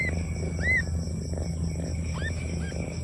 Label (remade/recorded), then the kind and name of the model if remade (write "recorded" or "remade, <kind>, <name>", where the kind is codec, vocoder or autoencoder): recorded